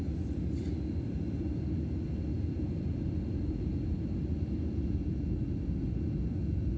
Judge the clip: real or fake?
real